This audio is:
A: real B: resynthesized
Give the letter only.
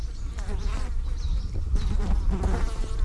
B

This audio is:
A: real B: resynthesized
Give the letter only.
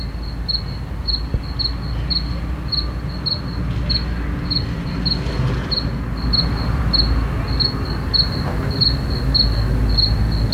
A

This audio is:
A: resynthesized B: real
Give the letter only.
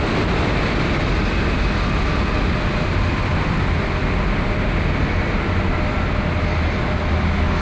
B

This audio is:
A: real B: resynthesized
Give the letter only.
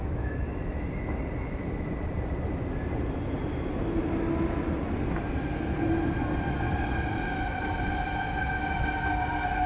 A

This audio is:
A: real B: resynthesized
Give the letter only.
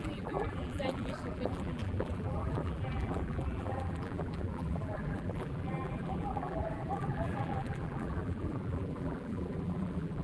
B